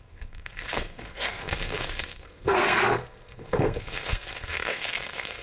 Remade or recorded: remade